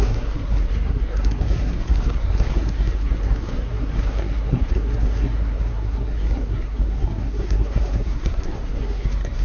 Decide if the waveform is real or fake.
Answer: fake